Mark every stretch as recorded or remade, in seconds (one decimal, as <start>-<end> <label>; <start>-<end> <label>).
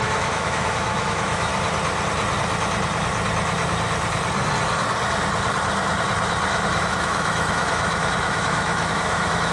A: 0.0-1.5 remade; 1.5-6.8 recorded; 6.8-9.5 remade